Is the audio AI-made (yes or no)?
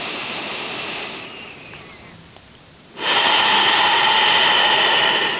no